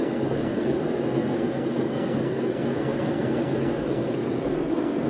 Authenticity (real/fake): fake